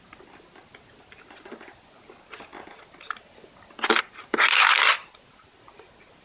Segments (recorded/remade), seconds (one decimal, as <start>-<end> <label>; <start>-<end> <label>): 0.0-6.2 recorded